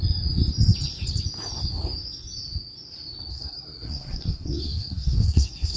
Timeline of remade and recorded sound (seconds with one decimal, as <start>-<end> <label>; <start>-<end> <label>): 0.0-3.3 recorded; 3.3-5.8 remade